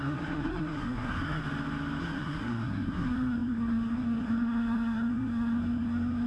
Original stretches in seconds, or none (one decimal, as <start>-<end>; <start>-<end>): 1.4-2.0

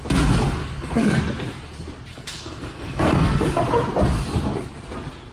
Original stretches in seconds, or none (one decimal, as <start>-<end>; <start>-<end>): 0.0-0.6; 1.2-2.1; 3.6-5.3

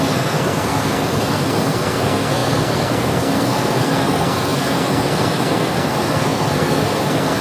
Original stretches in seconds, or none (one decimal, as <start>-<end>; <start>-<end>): none

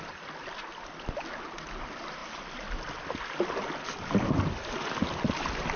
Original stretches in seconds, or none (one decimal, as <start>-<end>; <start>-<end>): 0.0-5.8

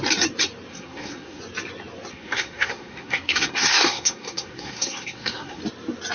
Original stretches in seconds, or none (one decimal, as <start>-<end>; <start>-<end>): 0.0-0.7; 1.4-2.1; 5.6-6.1

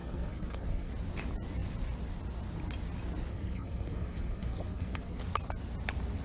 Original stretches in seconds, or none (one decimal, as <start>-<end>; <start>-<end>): 0.9-3.3; 5.2-6.2

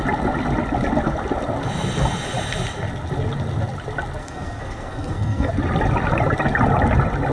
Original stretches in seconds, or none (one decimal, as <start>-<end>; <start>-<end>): 0.0-4.2; 5.5-7.3